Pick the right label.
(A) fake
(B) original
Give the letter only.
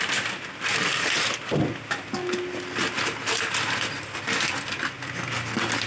B